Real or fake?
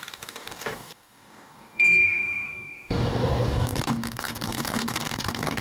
fake